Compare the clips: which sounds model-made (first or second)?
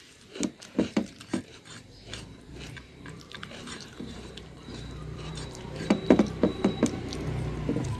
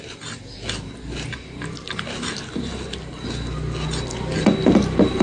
first